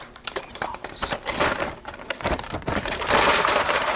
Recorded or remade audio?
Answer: remade